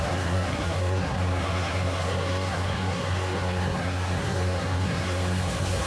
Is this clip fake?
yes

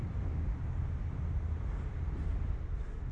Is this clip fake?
no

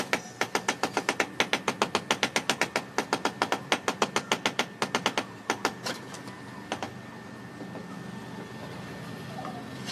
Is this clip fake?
no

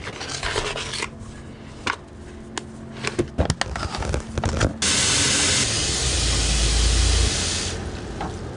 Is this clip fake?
no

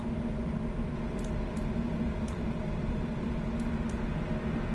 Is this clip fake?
no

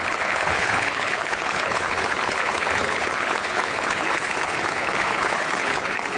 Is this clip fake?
yes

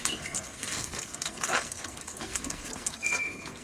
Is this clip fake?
yes